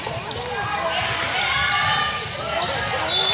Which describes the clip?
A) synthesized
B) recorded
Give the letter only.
B